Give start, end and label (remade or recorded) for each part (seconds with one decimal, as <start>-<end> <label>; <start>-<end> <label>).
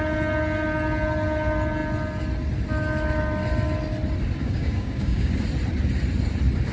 0.0-4.4 recorded; 4.4-5.3 remade; 5.3-6.7 recorded